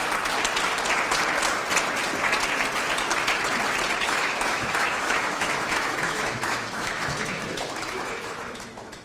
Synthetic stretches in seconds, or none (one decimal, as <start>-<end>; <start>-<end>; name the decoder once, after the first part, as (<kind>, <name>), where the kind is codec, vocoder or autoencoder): 4.0-9.0 (autoencoder, DAC-VAE)